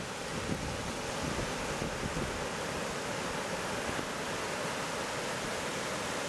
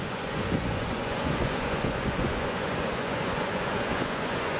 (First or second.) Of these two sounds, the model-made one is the second